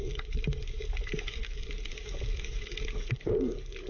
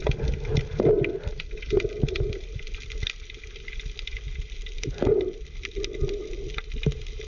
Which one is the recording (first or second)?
second